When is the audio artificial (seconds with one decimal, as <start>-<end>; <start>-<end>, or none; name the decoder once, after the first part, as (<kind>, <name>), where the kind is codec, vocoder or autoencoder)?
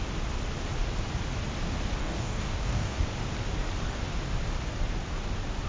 2.0-3.0 (codec, DAC)